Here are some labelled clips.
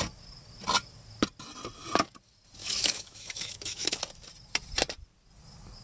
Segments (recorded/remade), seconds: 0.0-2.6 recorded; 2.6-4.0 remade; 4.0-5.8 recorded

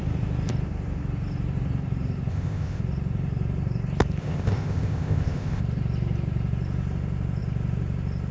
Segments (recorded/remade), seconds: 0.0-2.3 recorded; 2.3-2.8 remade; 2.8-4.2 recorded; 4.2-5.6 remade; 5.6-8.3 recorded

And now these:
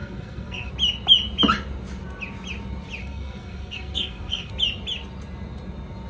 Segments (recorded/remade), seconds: 0.0-0.7 remade; 0.7-3.0 recorded; 3.0-4.5 remade; 4.5-6.1 recorded

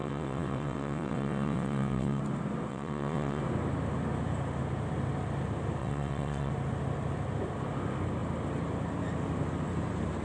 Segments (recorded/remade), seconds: 0.0-2.2 remade; 2.2-2.7 recorded; 2.7-3.4 remade; 3.4-5.8 recorded; 5.8-6.5 remade; 6.5-10.2 recorded